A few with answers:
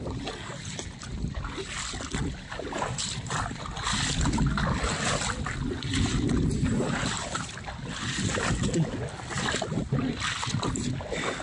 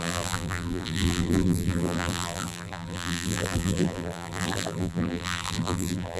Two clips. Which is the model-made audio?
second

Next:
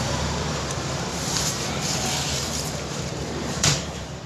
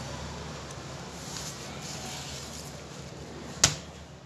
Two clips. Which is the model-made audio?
first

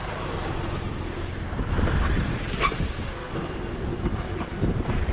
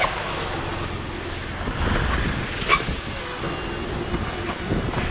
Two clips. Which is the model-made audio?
first